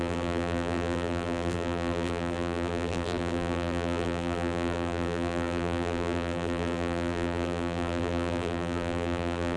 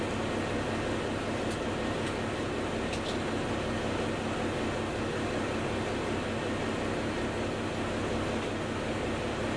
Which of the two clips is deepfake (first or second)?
first